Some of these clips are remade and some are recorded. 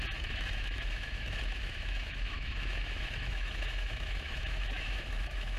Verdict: remade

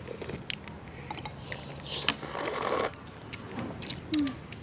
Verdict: recorded